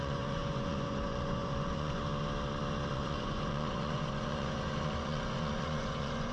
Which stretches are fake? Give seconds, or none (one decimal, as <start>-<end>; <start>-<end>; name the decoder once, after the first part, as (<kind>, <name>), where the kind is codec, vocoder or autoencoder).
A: 0.0-2.0 (vocoder, Vocos); 2.9-6.3